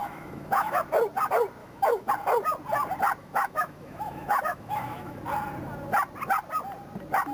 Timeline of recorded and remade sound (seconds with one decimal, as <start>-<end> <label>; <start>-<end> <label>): 0.0-0.8 remade; 0.8-1.6 recorded; 1.6-2.1 remade; 2.1-3.2 recorded; 3.2-5.2 remade; 5.2-7.3 recorded